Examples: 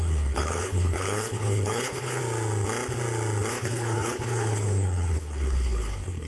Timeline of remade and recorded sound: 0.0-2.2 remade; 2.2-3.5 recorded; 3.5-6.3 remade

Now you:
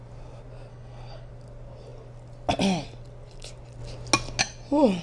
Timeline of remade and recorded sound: 0.0-0.7 recorded; 0.7-1.3 remade; 1.3-5.0 recorded

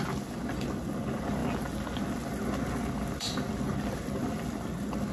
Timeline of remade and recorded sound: 0.0-5.1 recorded

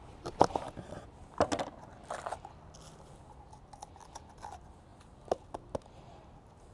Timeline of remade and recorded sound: 0.0-6.7 recorded

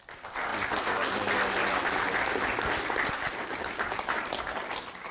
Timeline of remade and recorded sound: 0.0-5.1 recorded

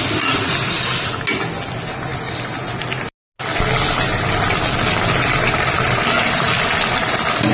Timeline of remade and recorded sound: 0.0-7.5 recorded